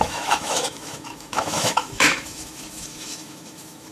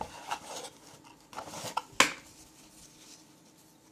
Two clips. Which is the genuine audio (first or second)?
second